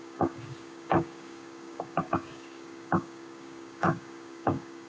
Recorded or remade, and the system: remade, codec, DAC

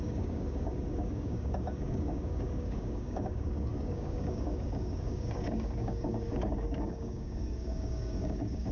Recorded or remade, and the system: remade, codec, DAC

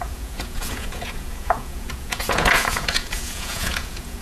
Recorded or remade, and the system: remade, vocoder, Vocos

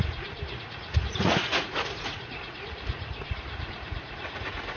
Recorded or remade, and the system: remade, vocoder, Vocos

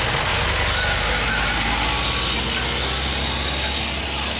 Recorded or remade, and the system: recorded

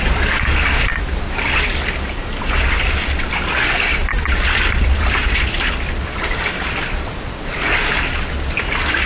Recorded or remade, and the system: recorded